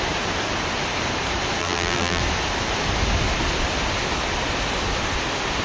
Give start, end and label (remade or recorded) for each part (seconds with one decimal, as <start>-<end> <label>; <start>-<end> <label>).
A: 0.0-1.6 recorded; 1.6-2.2 remade; 2.2-5.6 recorded